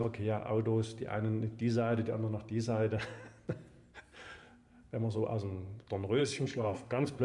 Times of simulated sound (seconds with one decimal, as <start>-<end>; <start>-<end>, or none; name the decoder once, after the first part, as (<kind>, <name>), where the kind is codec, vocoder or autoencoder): 6.2-7.2 (codec, SNAC)